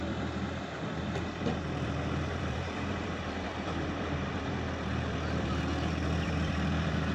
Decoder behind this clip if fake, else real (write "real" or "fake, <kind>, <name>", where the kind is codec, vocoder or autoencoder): fake, vocoder, BigVGAN v2